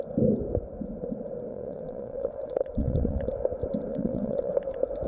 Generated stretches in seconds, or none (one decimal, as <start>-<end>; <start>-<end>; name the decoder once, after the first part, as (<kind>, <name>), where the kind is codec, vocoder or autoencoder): 1.5-3.3 (vocoder, WaveNeXt); 3.9-4.5